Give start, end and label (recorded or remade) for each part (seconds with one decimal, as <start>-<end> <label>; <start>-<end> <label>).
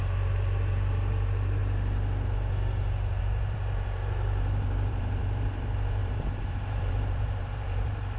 0.0-1.6 remade; 1.6-3.2 recorded; 3.2-8.2 remade